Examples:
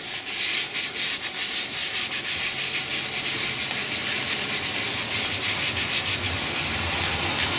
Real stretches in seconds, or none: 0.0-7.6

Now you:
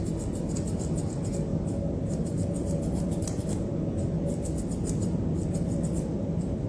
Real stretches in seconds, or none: 0.0-6.7

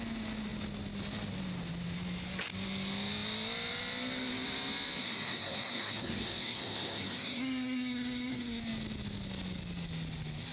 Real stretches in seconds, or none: 0.0-5.0; 8.6-10.5

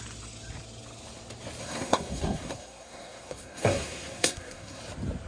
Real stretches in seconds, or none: 0.0-1.6; 4.8-5.3